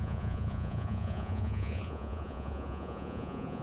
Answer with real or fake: fake